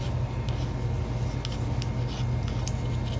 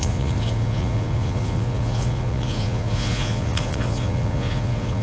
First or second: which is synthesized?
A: second